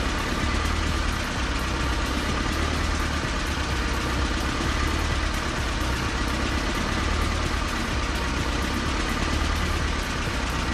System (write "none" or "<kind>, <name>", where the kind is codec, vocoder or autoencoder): none